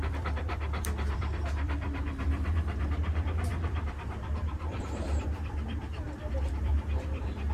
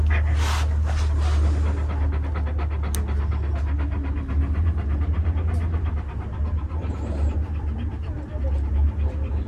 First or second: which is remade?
first